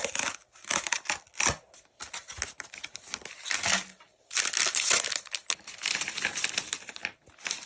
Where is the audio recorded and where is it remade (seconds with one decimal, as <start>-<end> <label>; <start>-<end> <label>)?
0.0-7.7 recorded